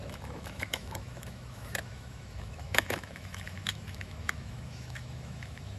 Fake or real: fake